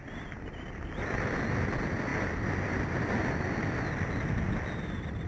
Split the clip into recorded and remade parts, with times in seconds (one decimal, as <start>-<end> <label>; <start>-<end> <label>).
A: 0.0-5.3 recorded